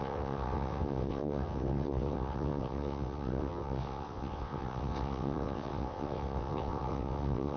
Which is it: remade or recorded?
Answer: remade